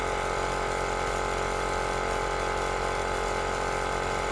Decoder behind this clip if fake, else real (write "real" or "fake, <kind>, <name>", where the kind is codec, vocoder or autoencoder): real